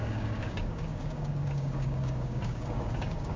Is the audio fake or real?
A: fake